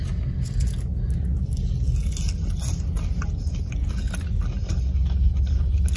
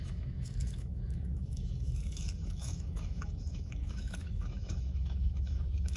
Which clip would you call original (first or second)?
first